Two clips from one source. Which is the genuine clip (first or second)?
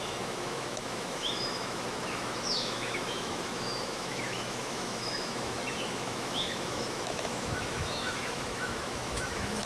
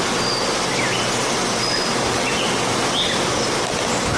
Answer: second